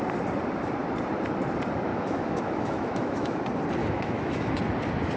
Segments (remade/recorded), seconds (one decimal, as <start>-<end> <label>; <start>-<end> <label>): 0.0-1.9 recorded; 1.9-3.4 remade; 3.4-3.8 recorded; 3.8-4.5 remade; 4.5-5.2 recorded